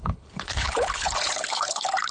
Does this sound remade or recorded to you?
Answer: remade